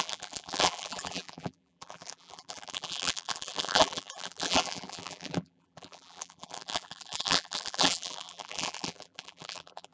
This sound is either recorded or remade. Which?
remade